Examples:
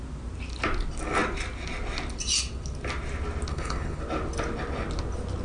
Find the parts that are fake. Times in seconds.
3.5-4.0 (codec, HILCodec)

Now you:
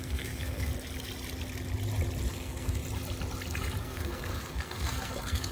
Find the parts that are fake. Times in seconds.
0.0-0.7 (codec, SNAC); 2.3-2.8; 3.8-5.5